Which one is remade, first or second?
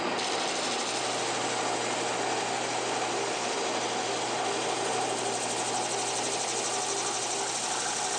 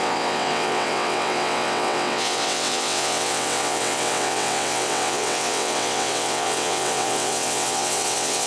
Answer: second